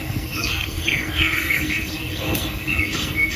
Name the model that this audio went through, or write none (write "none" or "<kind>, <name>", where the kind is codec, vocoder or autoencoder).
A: codec, SNAC